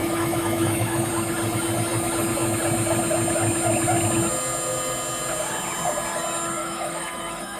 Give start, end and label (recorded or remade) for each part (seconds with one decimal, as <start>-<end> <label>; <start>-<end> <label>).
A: 0.0-1.1 remade; 1.1-6.6 recorded; 6.6-7.6 remade